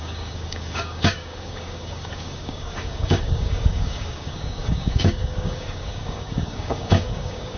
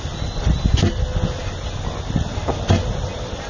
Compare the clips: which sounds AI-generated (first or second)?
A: first